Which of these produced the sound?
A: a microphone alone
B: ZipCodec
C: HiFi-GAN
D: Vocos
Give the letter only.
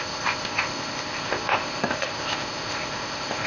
B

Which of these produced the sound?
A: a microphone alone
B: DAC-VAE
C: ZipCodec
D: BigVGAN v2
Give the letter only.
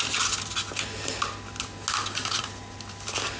A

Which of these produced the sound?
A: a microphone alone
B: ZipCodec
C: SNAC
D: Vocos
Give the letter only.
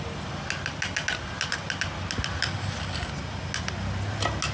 A